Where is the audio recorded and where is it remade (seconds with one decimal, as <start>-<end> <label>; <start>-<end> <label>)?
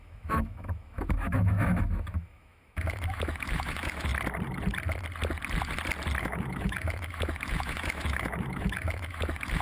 0.0-4.1 remade; 4.1-6.2 recorded; 6.2-9.6 remade